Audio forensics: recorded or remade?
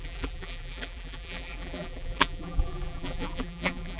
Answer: remade